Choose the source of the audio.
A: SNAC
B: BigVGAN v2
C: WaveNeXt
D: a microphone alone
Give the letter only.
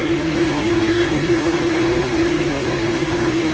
A